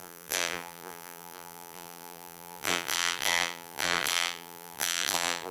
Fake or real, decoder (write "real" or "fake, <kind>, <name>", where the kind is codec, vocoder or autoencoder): fake, vocoder, BigVGAN v2